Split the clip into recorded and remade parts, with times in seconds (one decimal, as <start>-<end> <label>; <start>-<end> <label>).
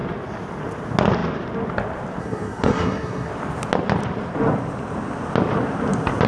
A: 0.0-2.2 recorded; 2.2-3.3 remade; 3.3-6.3 recorded